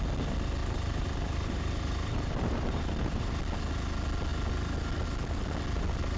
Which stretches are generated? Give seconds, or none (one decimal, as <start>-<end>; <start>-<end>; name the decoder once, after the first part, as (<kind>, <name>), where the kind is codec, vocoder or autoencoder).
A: 0.6-3.4 (vocoder, BigVGAN v2)